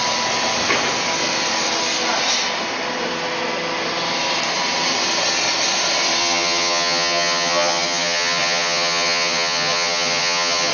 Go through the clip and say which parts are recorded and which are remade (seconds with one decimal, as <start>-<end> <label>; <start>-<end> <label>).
0.0-6.2 recorded; 6.2-10.7 remade